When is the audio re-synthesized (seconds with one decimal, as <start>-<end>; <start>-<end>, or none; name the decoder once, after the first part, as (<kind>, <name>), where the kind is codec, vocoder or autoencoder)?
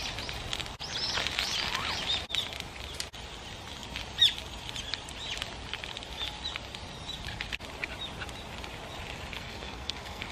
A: 9.3-10.3 (codec, SNAC)